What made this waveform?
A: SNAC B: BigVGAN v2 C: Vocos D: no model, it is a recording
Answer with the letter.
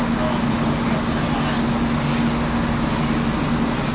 D